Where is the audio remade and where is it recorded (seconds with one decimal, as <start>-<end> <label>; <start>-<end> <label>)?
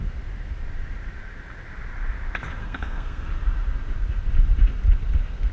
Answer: 0.0-2.6 recorded; 2.6-3.3 remade; 3.3-5.5 recorded